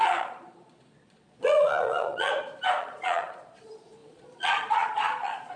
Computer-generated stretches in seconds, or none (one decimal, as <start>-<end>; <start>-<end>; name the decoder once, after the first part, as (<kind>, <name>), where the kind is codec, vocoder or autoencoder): 0.0-2.3 (vocoder, Vocos); 2.8-5.6

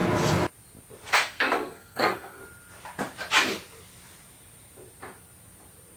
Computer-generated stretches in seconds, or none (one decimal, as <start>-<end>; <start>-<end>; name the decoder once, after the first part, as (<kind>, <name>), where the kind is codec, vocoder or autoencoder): 1.1-2.4 (codec, SNAC)

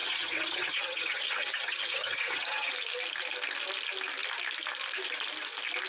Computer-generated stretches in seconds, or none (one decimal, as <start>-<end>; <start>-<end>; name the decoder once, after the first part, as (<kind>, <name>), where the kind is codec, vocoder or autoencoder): 0.0-2.7 (vocoder, HiFi-GAN)

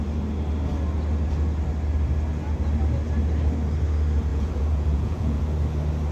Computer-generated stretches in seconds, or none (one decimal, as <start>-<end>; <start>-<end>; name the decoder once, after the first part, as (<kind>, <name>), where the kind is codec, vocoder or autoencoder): 4.3-5.4 (vocoder, Vocos)

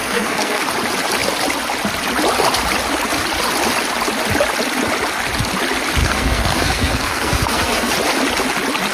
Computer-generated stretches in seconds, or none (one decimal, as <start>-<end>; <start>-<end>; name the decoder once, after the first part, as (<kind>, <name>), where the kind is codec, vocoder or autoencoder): 0.0-0.6 (codec, SNAC); 6.0-7.9

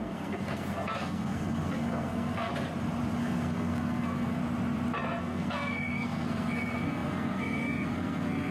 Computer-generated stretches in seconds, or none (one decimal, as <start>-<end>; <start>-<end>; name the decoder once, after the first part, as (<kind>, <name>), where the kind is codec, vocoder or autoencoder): 0.0-2.5 (codec, SNAC); 3.2-4.4; 5.2-8.5

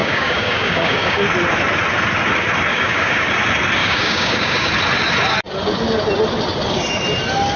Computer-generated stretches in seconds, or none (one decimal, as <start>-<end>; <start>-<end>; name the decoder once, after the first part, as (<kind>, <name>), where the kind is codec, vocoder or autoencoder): 0.0-1.2 (codec, DAC); 2.7-3.3; 3.8-4.7